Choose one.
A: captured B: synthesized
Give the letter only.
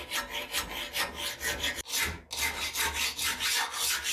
A